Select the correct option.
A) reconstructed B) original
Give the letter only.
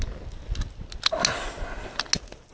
B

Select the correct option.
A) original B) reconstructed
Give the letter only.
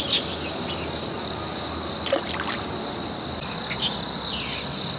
A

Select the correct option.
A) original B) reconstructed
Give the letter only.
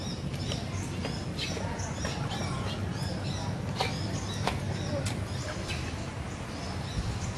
A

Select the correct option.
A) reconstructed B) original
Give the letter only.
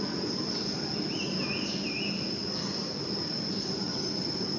B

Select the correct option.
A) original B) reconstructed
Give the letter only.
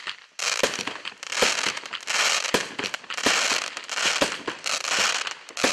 A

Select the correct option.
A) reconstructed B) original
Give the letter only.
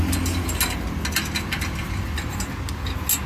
B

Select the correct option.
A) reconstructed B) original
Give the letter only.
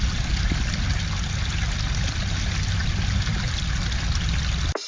B